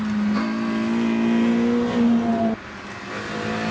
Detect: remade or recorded recorded